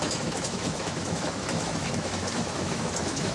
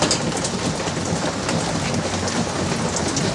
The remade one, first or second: first